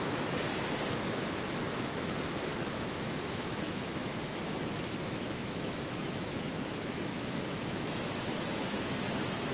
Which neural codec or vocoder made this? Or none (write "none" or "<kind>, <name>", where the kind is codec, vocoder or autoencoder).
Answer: autoencoder, DAC-VAE